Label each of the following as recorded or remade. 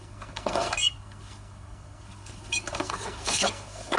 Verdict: remade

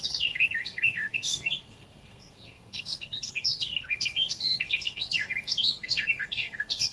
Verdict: remade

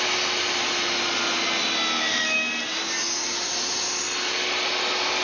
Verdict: recorded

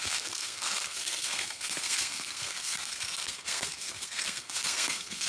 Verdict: remade